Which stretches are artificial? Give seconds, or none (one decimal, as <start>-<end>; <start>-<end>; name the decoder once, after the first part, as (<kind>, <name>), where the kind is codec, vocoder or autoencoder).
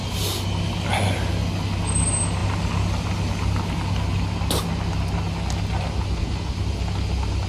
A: none